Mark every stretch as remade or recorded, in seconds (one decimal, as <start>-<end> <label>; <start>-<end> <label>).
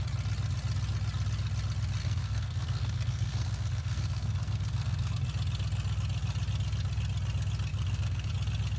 0.0-2.0 recorded; 2.0-5.1 remade; 5.1-7.7 recorded; 7.7-8.3 remade; 8.3-8.8 recorded